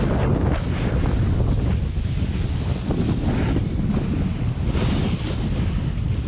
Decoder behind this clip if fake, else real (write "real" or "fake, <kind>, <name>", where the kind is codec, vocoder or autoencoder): real